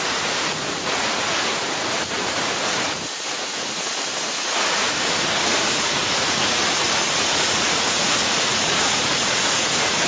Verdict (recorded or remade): remade